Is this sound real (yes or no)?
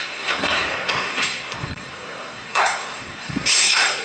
no